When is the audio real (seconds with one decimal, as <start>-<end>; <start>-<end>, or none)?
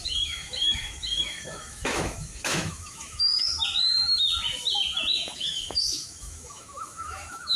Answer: 3.5-5.1